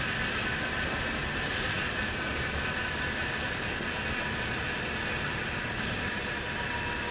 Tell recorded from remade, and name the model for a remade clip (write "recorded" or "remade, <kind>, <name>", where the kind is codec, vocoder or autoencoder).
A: recorded